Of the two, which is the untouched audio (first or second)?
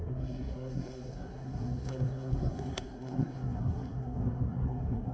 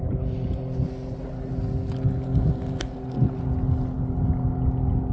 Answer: second